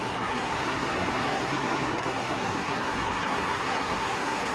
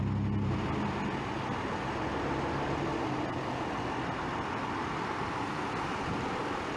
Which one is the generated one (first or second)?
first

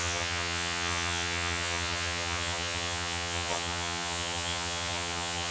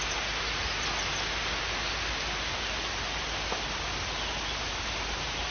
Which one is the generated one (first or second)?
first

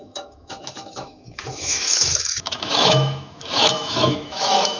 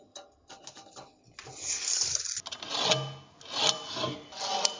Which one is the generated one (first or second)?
first